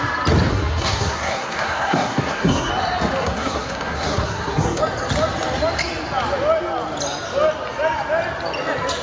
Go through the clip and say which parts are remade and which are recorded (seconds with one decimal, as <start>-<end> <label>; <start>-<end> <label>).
0.0-0.5 recorded; 0.5-2.7 remade; 2.7-3.2 recorded; 3.2-4.8 remade; 4.8-9.0 recorded